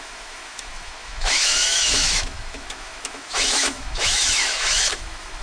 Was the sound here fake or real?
fake